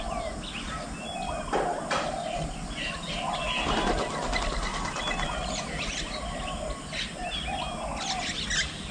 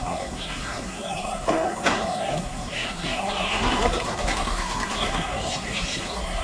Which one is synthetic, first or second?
second